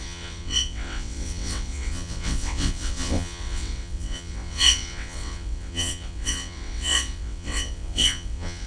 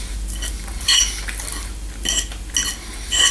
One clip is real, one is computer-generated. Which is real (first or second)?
second